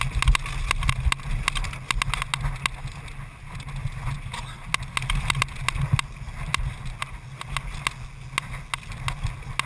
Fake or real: real